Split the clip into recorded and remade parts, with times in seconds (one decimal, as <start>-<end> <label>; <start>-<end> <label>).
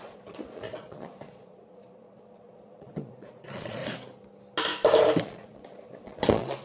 0.0-3.8 remade; 3.8-5.2 recorded; 5.2-6.6 remade